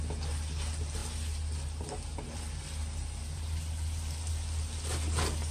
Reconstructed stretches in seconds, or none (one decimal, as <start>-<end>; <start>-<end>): none

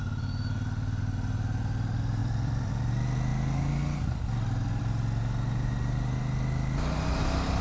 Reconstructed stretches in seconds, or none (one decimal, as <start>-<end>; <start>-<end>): 2.2-2.7

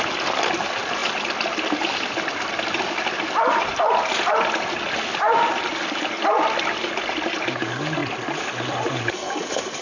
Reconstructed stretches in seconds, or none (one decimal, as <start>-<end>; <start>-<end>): none

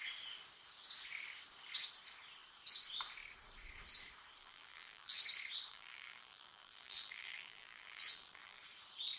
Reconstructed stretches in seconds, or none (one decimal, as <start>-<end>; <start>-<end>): 4.4-5.2; 5.7-8.6

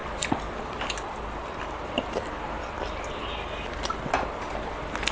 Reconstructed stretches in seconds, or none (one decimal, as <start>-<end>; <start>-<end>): none

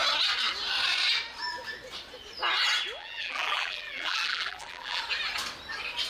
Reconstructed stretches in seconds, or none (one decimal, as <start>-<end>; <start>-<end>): 3.0-5.0

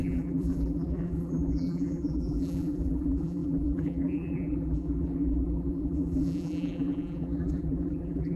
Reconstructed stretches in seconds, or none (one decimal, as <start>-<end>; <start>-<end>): 0.0-8.4

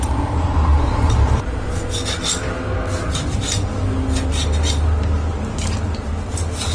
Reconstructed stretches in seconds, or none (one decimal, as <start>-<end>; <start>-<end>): 5.3-6.1